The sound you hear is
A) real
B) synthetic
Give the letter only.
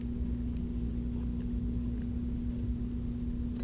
A